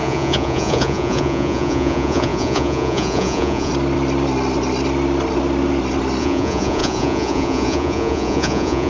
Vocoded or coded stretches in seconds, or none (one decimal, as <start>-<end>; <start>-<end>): 0.0-3.7; 6.2-8.9